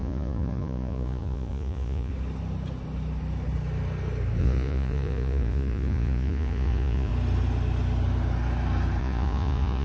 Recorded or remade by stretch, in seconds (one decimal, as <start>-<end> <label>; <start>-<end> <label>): 0.0-2.1 remade; 2.1-4.4 recorded; 4.4-7.1 remade; 7.1-9.0 recorded; 9.0-9.8 remade